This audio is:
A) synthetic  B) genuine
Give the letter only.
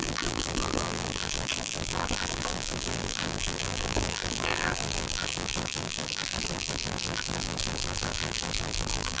A